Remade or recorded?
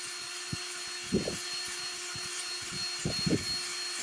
recorded